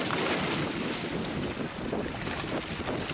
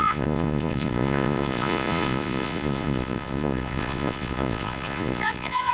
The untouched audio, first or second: first